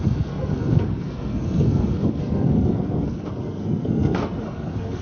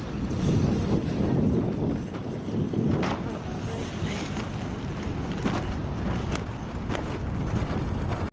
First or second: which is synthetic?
first